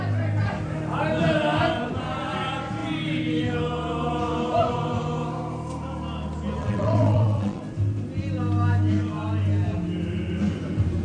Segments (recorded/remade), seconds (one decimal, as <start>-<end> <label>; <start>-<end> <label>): 0.0-6.6 recorded; 6.6-7.6 remade; 7.6-11.0 recorded